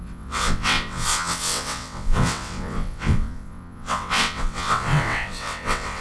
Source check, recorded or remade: remade